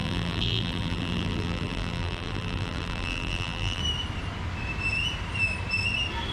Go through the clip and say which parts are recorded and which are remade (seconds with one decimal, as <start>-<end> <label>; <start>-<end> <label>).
0.0-3.8 remade; 3.8-6.3 recorded